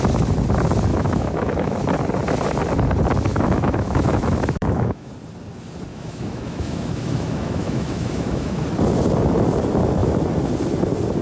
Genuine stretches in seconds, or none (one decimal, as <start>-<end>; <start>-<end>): 0.0-0.9; 1.8-3.3; 5.1-5.9; 8.6-11.2